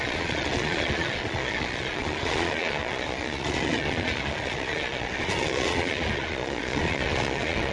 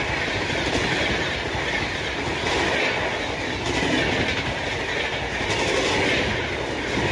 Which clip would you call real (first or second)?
second